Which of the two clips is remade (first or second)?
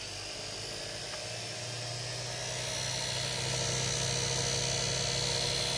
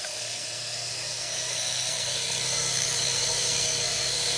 second